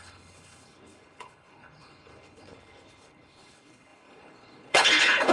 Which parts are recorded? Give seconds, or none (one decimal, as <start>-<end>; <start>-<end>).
none